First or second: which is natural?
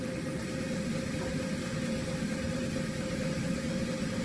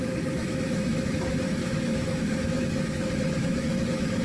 first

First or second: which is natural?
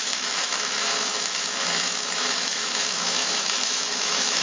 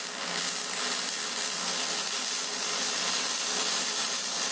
second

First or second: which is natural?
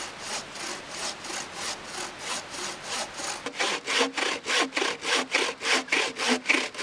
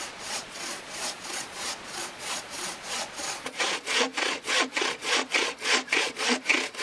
first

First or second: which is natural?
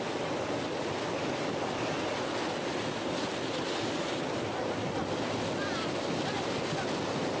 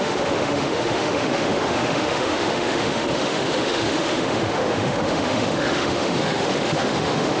first